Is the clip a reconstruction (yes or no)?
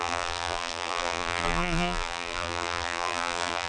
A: yes